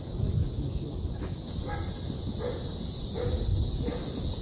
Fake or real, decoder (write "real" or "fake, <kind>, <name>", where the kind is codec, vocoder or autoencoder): real